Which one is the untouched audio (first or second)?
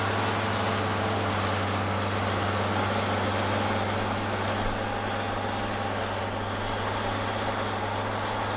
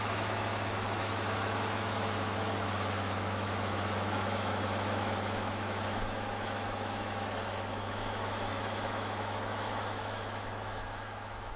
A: first